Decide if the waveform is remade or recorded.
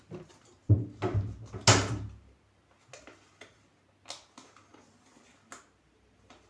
recorded